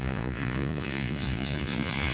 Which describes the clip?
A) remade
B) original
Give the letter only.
A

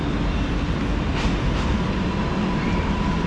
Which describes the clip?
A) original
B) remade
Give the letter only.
A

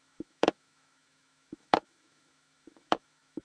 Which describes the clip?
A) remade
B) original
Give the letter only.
A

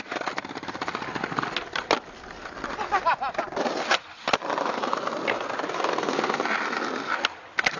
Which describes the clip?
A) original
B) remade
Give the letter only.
A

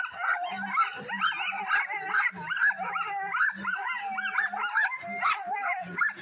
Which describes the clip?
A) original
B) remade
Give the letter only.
A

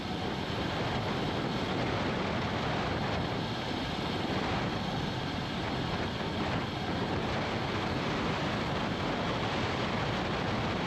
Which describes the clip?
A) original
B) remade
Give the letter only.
A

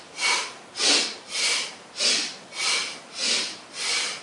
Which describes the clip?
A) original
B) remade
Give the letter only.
A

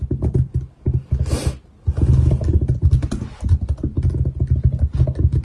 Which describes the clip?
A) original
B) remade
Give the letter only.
A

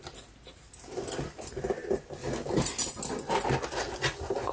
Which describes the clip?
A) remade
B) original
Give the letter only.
B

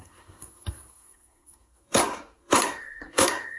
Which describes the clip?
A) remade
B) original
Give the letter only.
A